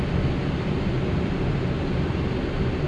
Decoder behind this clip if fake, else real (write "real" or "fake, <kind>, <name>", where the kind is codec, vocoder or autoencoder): fake, vocoder, BigVGAN v2